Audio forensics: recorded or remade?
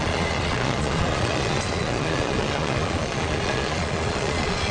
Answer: remade